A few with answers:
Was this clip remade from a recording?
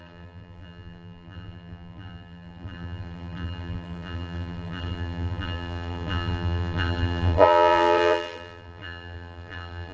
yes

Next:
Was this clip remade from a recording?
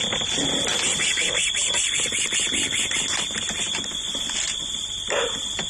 no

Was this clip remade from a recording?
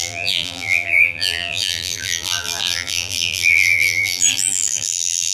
yes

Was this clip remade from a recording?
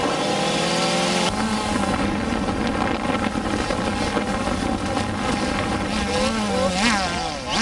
no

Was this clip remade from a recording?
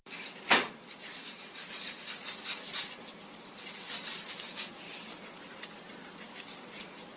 yes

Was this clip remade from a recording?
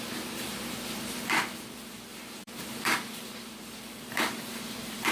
yes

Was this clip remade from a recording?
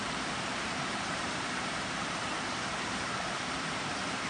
yes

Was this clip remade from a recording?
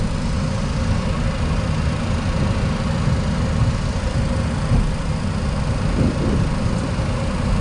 no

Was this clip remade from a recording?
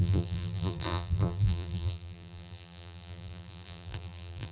yes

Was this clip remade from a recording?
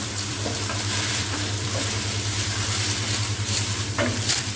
yes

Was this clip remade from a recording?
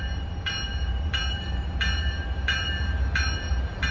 yes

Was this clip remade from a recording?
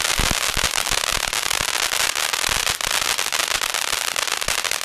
no